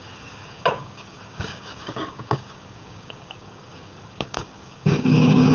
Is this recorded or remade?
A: remade